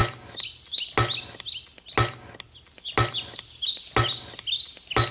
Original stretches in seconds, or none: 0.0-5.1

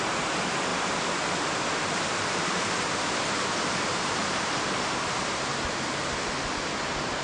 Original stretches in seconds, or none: 5.5-6.8